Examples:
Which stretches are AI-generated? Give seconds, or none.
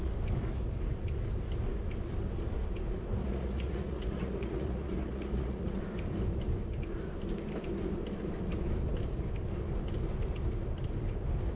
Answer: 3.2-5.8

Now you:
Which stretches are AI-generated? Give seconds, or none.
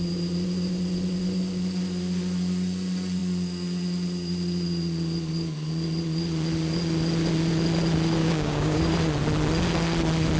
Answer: 8.2-8.8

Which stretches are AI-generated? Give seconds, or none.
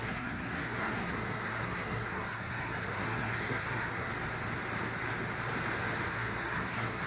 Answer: 0.0-4.1; 6.1-7.1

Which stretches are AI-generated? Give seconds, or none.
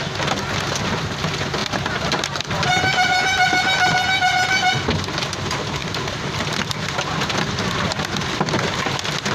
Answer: 5.8-7.0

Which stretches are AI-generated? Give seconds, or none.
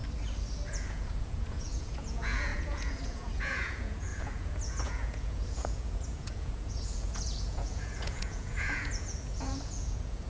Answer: 0.7-10.3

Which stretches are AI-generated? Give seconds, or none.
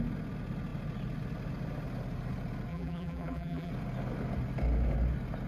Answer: 2.7-3.7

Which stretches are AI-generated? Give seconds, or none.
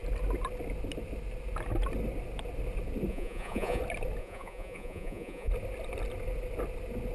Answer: 3.1-3.8; 4.2-5.5